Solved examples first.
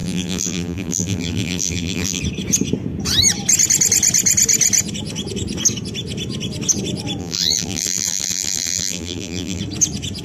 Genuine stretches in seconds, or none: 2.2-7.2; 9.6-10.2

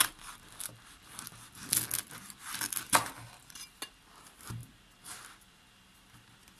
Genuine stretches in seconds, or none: 0.0-6.6

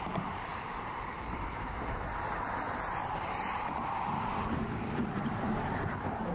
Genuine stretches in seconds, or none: none

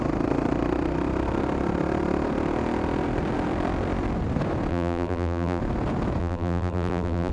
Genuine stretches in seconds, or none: 0.0-4.7; 5.6-6.2

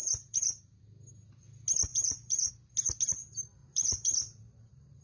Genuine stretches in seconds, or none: 0.8-1.9; 2.5-3.6